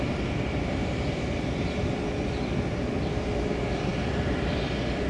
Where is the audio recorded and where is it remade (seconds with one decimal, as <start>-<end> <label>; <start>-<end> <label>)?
0.0-5.1 recorded